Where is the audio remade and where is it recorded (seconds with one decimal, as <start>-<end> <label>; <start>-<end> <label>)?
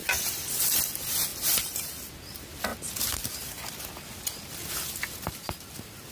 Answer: 0.0-0.8 remade; 0.8-6.1 recorded